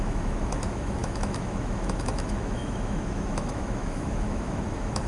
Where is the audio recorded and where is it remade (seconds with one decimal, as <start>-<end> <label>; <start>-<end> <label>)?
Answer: 0.0-5.1 remade